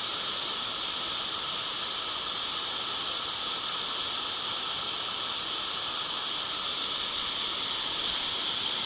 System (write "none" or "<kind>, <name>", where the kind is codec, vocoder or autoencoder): none